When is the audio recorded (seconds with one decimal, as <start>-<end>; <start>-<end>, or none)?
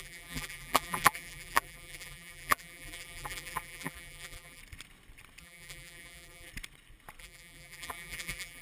4.6-5.4; 6.5-7.2